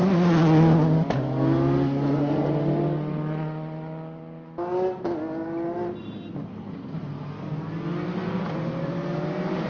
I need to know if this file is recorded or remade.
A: recorded